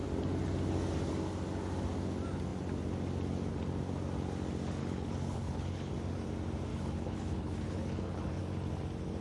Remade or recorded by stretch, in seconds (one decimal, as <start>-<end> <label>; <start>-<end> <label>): 0.0-4.8 recorded; 4.8-5.9 remade; 5.9-6.7 recorded; 6.7-8.4 remade; 8.4-9.2 recorded